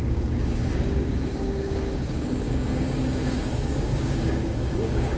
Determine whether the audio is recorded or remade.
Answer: remade